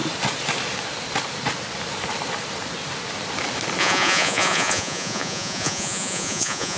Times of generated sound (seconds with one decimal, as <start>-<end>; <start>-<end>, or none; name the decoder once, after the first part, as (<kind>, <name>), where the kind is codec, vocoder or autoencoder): 3.8-6.8 (vocoder, Vocos)